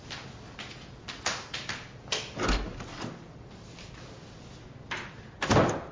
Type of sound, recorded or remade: recorded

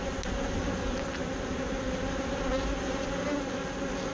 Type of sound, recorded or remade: recorded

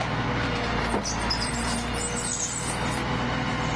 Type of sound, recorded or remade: remade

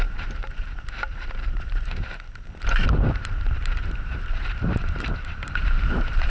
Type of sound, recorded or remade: remade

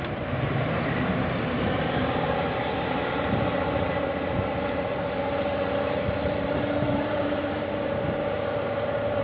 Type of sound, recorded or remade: remade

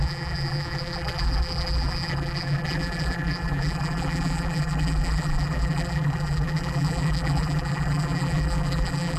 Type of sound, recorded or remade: remade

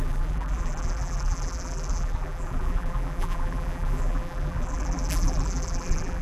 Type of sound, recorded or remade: remade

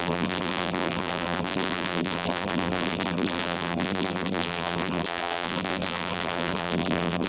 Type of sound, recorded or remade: remade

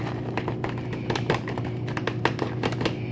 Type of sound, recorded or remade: recorded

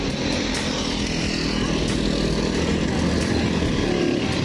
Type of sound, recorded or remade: recorded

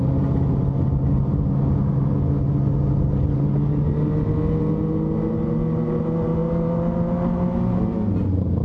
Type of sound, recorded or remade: recorded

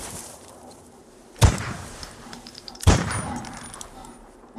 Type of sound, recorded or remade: remade